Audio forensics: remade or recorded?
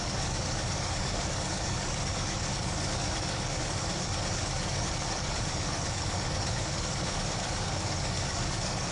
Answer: remade